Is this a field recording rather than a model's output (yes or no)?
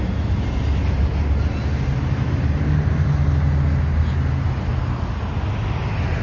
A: yes